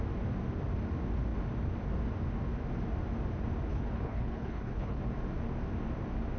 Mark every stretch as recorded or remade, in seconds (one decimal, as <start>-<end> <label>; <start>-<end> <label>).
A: 0.0-3.7 recorded; 3.7-5.0 remade; 5.0-6.4 recorded